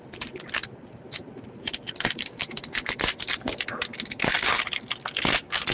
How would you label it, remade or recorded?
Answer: recorded